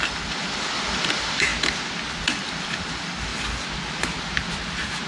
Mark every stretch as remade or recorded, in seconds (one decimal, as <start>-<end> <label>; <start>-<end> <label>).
0.0-1.5 remade; 1.5-2.2 recorded; 2.2-3.3 remade; 3.3-5.1 recorded